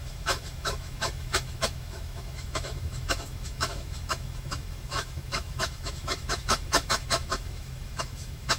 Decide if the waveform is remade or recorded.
remade